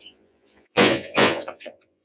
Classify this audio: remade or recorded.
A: remade